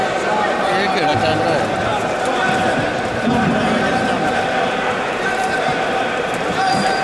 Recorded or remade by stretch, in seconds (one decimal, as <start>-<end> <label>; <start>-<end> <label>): 0.0-7.0 recorded